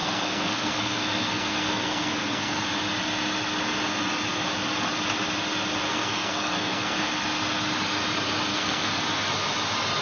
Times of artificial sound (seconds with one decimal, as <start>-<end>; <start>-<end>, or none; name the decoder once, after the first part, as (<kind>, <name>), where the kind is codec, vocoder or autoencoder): 0.0-2.6 (codec, SNAC); 5.9-7.2; 8.5-9.0